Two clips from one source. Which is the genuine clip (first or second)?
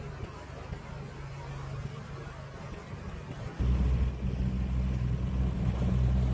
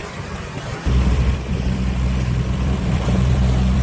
first